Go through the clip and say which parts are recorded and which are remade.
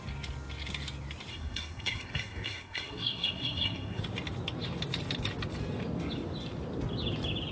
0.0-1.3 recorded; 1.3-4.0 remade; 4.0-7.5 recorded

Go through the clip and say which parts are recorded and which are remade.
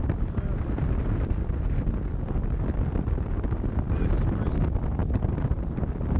0.0-6.2 recorded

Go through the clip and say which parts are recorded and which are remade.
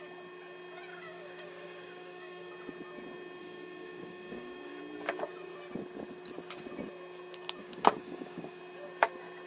0.0-0.9 recorded; 0.9-2.5 remade; 2.5-3.4 recorded; 3.4-4.8 remade; 4.8-7.6 recorded; 7.6-8.6 remade; 8.6-9.5 recorded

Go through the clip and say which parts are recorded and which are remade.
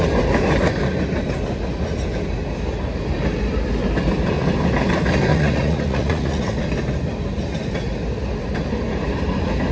0.0-5.3 recorded; 5.3-6.6 remade; 6.6-9.7 recorded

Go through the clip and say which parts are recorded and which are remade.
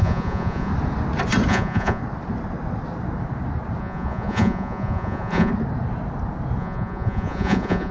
0.0-0.7 remade; 0.7-1.5 recorded; 1.5-2.0 remade; 2.0-3.8 recorded; 3.8-5.5 remade; 5.5-6.6 recorded; 6.6-7.9 remade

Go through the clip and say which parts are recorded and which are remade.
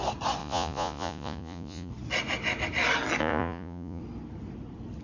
0.0-0.4 recorded; 0.4-1.9 remade; 1.9-3.2 recorded; 3.2-4.0 remade; 4.0-5.0 recorded